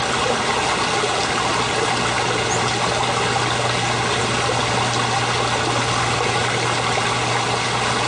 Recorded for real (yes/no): yes